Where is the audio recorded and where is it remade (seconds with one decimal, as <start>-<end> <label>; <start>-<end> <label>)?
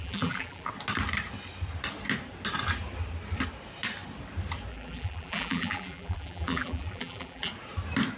0.0-0.7 remade; 0.7-4.7 recorded; 4.7-7.5 remade; 7.5-8.2 recorded